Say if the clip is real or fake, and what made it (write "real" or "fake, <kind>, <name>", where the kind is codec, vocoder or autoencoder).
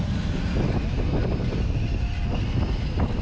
real